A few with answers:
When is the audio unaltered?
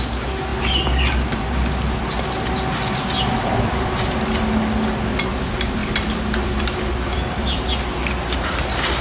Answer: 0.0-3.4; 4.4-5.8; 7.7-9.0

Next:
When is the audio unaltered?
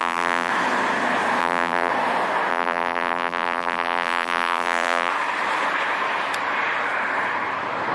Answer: 0.5-1.4; 1.9-2.5; 5.1-7.9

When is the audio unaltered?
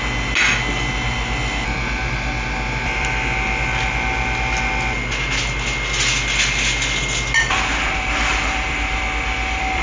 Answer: 0.0-7.7; 9.0-9.8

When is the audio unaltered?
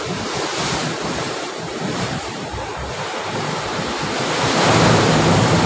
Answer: none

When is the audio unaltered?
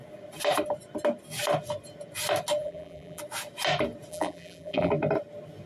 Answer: 0.0-2.6; 3.2-4.1; 4.9-5.7